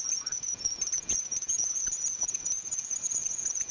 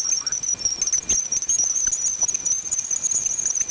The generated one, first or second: first